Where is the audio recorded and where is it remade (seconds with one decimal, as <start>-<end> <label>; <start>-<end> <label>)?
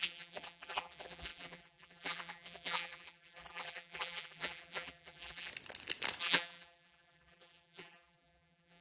0.0-5.5 remade; 5.5-6.2 recorded; 6.2-8.8 remade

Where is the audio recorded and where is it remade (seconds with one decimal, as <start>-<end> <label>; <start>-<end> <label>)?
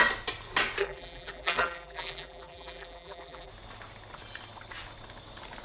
0.0-0.8 recorded; 0.8-3.5 remade; 3.5-5.6 recorded